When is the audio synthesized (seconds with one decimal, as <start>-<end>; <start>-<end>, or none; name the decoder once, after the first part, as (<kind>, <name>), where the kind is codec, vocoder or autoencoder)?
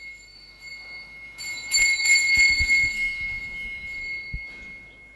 0.0-4.0 (autoencoder, DAC-VAE)